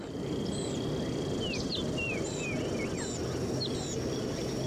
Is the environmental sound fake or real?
real